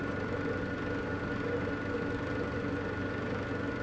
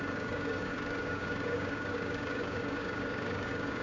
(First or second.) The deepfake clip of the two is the second